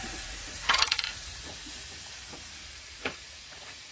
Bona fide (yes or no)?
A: no